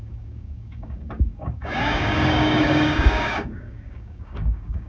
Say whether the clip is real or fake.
fake